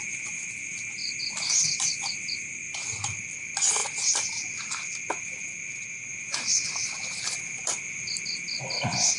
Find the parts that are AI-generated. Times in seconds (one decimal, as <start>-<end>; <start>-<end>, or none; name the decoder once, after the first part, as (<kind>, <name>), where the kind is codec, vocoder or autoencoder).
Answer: 1.0-3.4 (vocoder, BigVGAN v2); 3.8-5.6; 6.1-8.1